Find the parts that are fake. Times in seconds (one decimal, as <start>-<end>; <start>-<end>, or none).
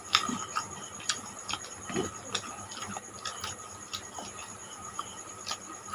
4.6-5.2